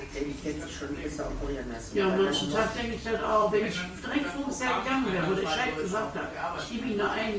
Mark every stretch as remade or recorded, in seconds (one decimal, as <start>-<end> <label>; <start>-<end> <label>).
0.0-3.4 recorded; 3.4-4.2 remade; 4.2-7.4 recorded